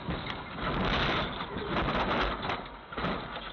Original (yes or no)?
yes